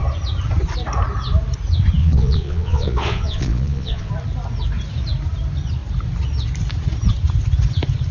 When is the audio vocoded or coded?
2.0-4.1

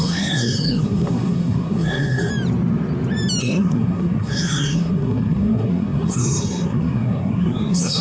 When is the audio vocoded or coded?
0.0-2.3; 3.4-8.0

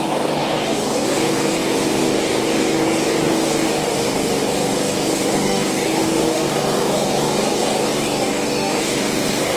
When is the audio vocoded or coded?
0.0-9.6

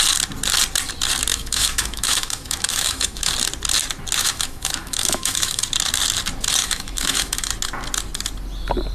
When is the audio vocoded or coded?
1.3-3.3; 4.2-5.6; 6.6-7.5

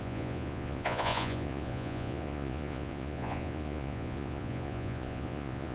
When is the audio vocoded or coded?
0.0-5.7

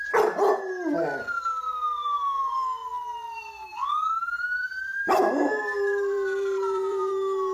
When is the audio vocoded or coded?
4.0-7.1

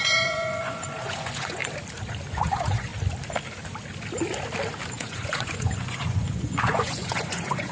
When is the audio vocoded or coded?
0.0-1.6; 2.3-2.9; 4.9-7.7

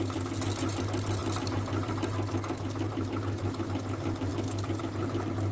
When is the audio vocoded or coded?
none